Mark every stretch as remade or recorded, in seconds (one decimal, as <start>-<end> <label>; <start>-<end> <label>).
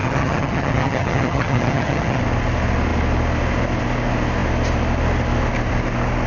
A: 0.0-2.2 remade; 2.2-6.3 recorded